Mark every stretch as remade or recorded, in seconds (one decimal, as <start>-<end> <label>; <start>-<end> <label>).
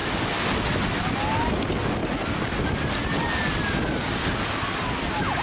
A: 0.0-5.4 recorded